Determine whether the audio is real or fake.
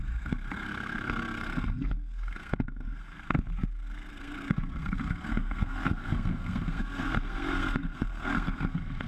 fake